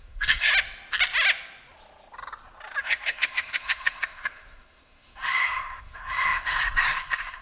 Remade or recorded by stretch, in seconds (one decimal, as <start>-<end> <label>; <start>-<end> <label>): 0.0-0.5 remade; 0.5-2.8 recorded; 2.8-7.4 remade